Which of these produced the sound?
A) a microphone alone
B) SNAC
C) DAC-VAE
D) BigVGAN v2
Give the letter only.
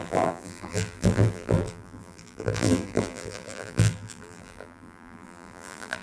D